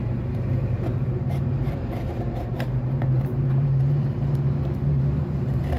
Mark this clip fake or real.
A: fake